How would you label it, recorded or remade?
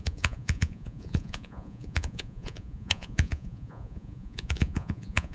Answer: remade